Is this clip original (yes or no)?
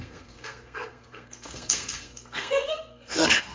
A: no